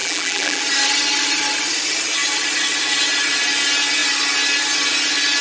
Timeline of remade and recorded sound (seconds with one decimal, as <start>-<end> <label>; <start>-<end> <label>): 0.0-0.6 remade; 0.6-5.4 recorded